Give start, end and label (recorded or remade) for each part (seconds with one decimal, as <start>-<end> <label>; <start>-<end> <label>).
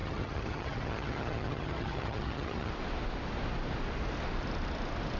0.0-2.7 remade; 2.7-5.2 recorded